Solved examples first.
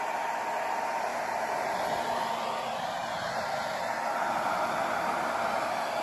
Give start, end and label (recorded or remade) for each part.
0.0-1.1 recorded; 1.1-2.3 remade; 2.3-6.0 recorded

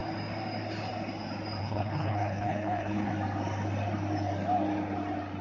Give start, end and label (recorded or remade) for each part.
0.0-1.6 recorded; 1.6-3.1 remade; 3.1-5.4 recorded